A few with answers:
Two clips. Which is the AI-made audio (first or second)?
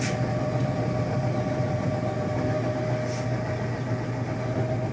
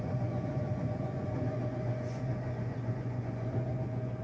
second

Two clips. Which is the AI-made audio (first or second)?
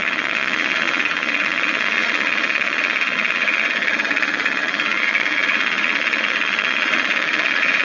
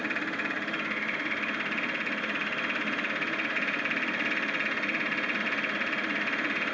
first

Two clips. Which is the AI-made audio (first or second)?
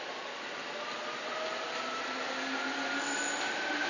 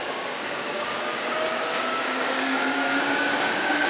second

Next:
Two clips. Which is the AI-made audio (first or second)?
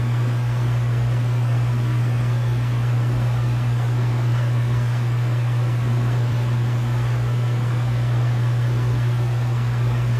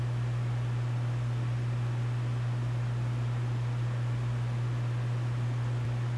first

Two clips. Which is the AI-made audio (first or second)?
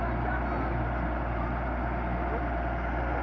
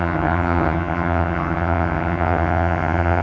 second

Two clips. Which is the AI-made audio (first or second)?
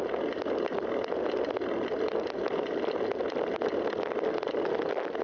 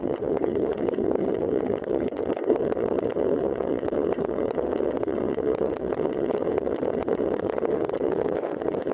second